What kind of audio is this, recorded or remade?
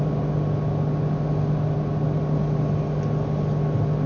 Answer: recorded